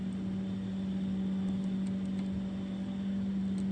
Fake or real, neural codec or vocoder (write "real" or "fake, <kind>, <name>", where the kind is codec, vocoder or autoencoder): real